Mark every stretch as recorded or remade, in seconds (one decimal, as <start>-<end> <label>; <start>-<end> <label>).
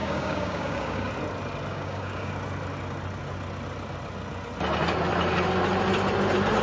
0.0-1.1 remade; 1.1-1.7 recorded; 1.7-2.3 remade; 2.3-6.6 recorded